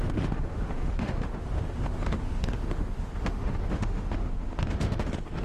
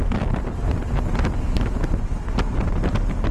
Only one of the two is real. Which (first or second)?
second